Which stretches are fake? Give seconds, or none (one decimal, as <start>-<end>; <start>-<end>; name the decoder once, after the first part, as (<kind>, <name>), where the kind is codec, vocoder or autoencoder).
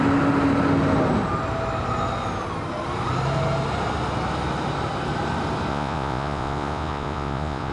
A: 5.7-7.7 (vocoder, Vocos)